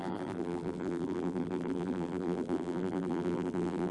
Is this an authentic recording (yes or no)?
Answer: no